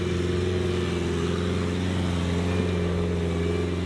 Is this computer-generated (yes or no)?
no